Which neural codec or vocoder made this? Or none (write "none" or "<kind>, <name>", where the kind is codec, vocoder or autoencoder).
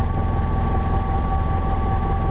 vocoder, BigVGAN v2